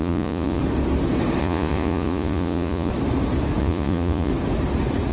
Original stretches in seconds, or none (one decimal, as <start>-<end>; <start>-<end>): 0.6-1.4; 2.9-3.6; 4.3-5.1

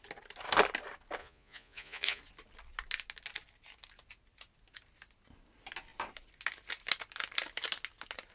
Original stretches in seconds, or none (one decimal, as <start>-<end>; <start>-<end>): 0.0-1.2; 2.2-8.3

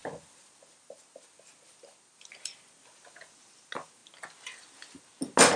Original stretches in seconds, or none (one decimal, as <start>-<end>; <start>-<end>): 0.0-5.6

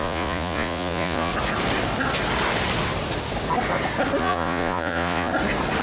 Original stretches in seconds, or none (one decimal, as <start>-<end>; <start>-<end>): 1.3-4.2; 5.3-5.8

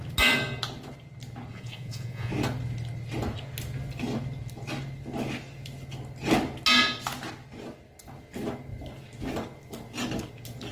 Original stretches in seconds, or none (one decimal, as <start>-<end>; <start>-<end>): 0.0-1.5; 2.3-10.7

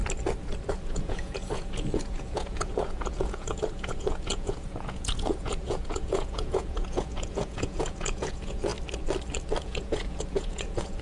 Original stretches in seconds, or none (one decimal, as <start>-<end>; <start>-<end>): 0.0-0.7; 8.7-9.6

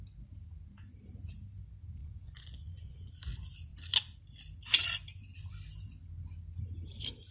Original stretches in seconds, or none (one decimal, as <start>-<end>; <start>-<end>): 0.0-2.0; 3.1-7.3

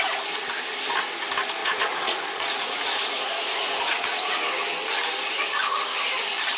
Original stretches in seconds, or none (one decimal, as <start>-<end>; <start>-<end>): 0.0-1.6; 4.3-6.6